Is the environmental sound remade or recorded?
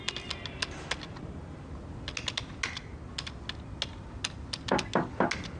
recorded